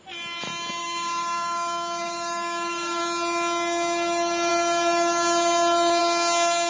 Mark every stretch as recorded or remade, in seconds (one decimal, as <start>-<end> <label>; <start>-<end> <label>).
0.0-0.8 recorded; 0.8-3.0 remade; 3.0-6.7 recorded

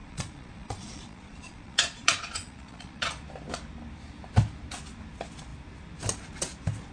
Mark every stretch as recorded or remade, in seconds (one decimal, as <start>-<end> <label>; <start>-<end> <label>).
0.0-3.1 remade; 3.1-6.9 recorded

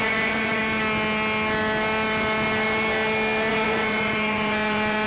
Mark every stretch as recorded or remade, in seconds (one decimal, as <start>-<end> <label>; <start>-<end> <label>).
0.0-0.6 remade; 0.6-3.5 recorded; 3.5-5.1 remade

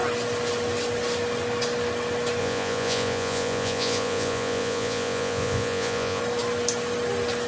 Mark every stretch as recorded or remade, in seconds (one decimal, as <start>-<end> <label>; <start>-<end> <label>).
0.0-2.4 recorded; 2.4-6.2 remade; 6.2-7.5 recorded

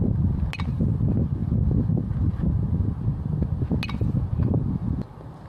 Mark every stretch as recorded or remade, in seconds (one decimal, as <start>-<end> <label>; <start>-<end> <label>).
0.0-5.5 recorded

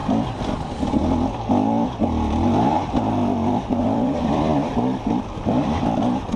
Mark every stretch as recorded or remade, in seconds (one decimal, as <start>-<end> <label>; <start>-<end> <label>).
0.0-3.8 recorded; 3.8-4.5 remade; 4.5-5.2 recorded; 5.2-6.4 remade